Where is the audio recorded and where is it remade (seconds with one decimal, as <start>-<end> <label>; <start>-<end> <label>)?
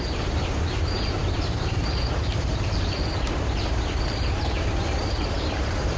0.0-6.0 remade